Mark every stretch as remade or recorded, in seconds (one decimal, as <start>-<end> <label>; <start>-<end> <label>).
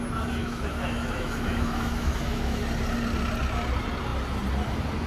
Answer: 0.0-0.4 recorded; 0.4-2.6 remade; 2.6-5.1 recorded